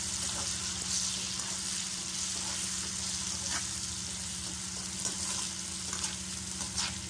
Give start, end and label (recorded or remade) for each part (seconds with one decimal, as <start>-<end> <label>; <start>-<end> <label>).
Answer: 0.0-7.1 recorded